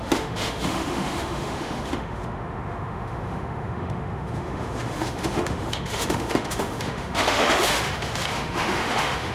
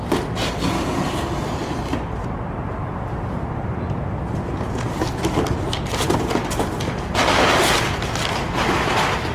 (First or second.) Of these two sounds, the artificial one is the first